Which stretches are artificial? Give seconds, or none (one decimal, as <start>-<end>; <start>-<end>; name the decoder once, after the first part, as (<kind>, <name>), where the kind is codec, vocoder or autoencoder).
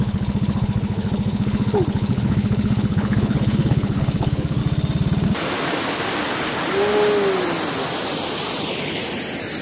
0.0-4.6 (codec, HILCodec); 8.6-9.0